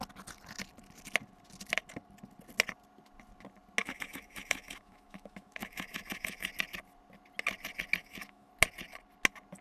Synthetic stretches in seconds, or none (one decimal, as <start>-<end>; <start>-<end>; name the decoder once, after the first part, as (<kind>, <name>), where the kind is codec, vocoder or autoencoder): 3.8-6.5 (autoencoder, DAC-VAE); 8.0-8.5

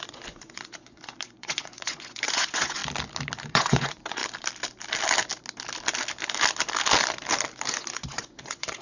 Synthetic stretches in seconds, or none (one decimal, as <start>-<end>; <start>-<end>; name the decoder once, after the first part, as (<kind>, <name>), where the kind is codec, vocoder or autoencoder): 0.0-2.8 (vocoder, Vocos); 3.4-4.2; 7.7-8.8

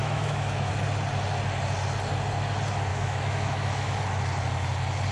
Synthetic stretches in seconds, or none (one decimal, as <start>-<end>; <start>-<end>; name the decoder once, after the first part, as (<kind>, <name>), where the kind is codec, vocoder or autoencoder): 0.0-0.7 (autoencoder, DAC-VAE); 2.9-4.0

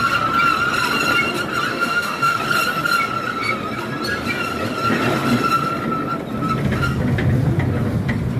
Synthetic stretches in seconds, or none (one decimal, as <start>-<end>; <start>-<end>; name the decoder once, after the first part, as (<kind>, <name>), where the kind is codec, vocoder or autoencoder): 1.7-2.4 (autoencoder, DAC-VAE)

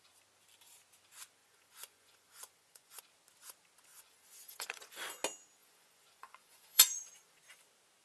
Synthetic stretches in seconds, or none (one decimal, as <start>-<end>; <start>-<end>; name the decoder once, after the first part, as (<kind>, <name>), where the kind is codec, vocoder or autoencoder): 1.4-3.0 (vocoder, Vocos); 3.9-5.0; 5.6-7.4

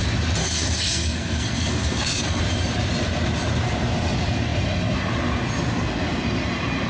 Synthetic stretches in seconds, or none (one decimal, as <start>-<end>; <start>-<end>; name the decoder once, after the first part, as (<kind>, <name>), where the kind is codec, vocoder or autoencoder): 0.4-2.4 (codec, SNAC)